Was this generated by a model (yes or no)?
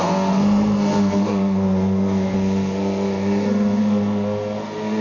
yes